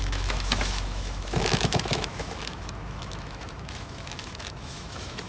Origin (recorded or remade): remade